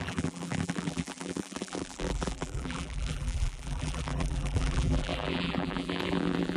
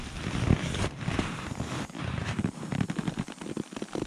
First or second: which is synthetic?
first